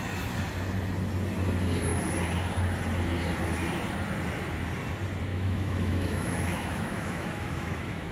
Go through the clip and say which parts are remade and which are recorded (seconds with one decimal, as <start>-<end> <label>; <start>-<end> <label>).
0.0-5.3 recorded; 5.3-8.1 remade